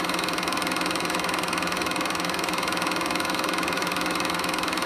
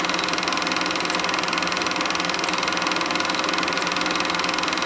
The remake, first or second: first